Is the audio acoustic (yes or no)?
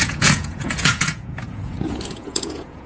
no